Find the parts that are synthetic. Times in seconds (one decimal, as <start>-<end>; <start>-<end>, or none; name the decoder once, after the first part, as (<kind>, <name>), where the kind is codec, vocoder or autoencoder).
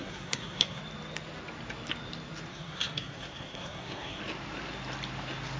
0.0-0.8 (codec, SNAC); 2.5-4.2